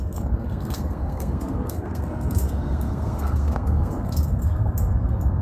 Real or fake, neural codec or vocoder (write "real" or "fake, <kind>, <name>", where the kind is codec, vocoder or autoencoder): fake, codec, SNAC